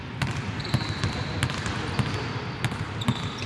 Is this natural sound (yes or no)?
no